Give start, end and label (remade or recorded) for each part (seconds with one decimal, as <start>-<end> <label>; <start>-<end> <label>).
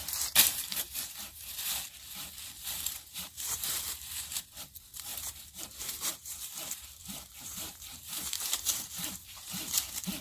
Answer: 0.0-1.5 remade; 1.5-2.7 recorded; 2.7-6.5 remade; 6.5-7.4 recorded; 7.4-10.2 remade